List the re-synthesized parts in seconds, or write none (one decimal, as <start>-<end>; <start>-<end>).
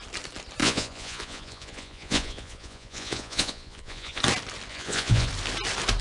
0.6-4.2; 4.7-5.3